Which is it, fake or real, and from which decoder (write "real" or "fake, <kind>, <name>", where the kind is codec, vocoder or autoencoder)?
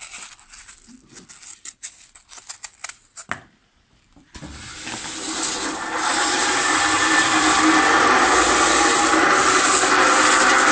real